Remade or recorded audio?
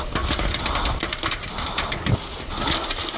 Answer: recorded